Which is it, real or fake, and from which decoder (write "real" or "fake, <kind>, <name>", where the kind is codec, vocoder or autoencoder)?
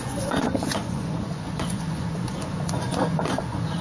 fake, vocoder, Vocos